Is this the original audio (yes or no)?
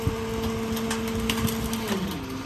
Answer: yes